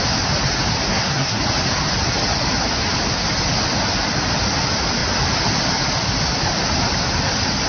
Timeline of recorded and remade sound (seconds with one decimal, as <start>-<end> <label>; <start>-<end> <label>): 0.0-0.9 recorded; 0.9-1.4 remade; 1.4-7.7 recorded